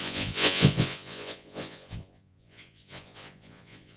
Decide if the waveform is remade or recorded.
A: remade